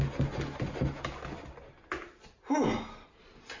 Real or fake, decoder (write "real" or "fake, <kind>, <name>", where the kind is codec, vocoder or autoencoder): real